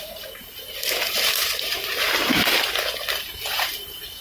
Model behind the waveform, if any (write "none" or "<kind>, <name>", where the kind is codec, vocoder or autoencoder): vocoder, BigVGAN v2